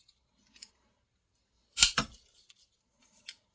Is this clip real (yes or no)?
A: no